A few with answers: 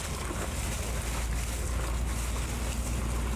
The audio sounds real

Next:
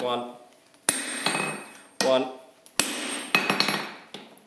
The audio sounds real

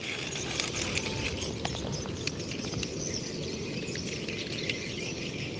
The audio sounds real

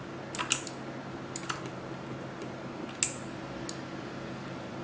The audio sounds real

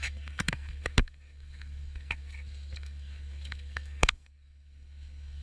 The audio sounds fake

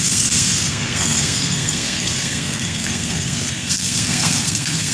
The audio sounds fake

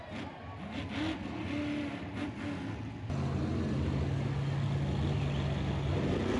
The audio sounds real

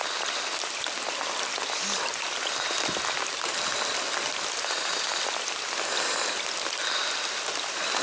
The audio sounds real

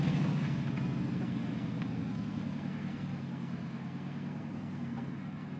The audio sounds fake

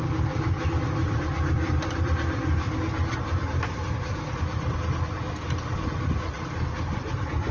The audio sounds real